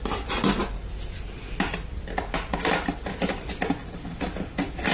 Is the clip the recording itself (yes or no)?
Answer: yes